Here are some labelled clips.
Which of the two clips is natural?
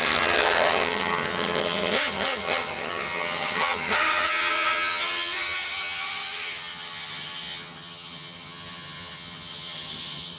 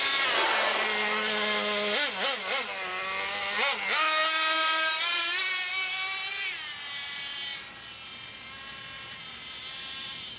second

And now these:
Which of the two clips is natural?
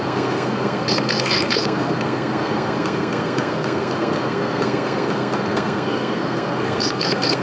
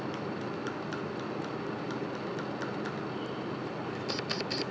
second